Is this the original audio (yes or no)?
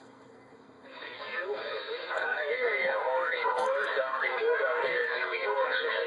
no